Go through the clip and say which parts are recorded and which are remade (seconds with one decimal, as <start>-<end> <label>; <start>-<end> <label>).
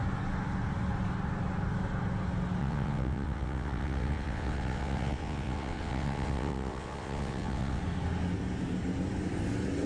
0.0-2.6 recorded; 2.6-7.8 remade; 7.8-9.9 recorded